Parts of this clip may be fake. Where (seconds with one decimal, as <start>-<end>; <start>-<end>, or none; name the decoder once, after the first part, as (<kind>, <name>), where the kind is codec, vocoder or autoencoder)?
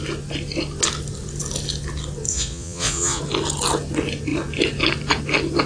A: 2.3-3.2 (vocoder, Vocos)